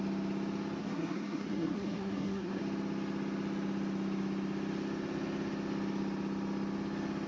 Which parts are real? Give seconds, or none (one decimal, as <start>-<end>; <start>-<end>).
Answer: 0.0-0.8; 2.6-7.3